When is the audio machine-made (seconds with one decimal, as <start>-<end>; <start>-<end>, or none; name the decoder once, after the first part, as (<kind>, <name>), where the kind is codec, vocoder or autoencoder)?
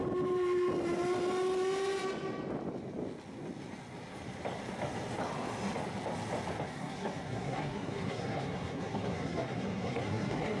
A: 6.7-10.6 (codec, SNAC)